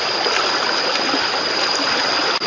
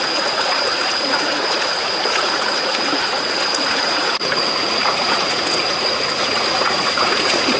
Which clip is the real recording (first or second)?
first